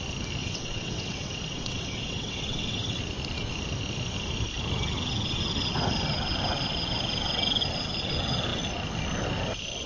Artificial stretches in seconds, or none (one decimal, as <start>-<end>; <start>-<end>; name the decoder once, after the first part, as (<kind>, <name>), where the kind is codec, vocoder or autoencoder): 0.4-3.0 (vocoder, WaveNeXt)